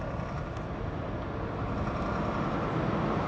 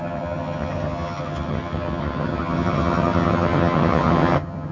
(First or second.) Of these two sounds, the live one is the first